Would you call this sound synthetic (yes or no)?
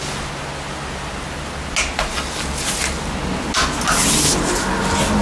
no